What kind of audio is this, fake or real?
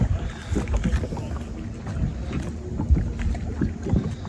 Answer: real